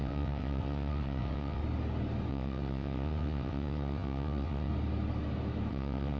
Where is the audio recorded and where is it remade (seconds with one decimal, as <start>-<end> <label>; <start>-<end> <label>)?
0.0-1.6 remade; 1.6-2.3 recorded; 2.3-4.7 remade; 4.7-5.7 recorded; 5.7-6.2 remade